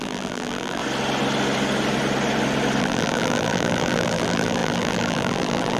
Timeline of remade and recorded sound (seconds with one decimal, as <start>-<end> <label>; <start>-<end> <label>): 0.0-0.8 remade; 0.8-2.8 recorded; 2.8-5.8 remade